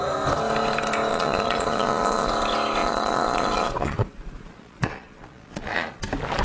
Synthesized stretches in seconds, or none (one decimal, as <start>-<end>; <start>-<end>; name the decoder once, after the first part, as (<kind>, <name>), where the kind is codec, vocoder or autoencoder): 1.1-2.3 (vocoder, Vocos); 2.8-6.0